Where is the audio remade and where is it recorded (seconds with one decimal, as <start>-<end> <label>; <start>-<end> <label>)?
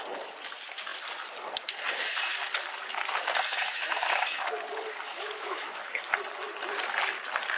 0.0-3.7 recorded; 3.7-4.5 remade; 4.5-5.1 recorded; 5.1-5.9 remade; 5.9-7.6 recorded